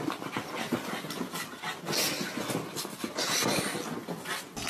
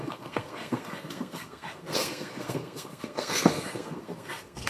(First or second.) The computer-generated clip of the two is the second